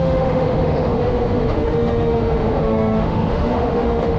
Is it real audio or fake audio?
fake